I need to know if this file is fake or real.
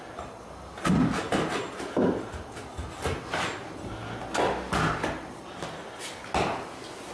real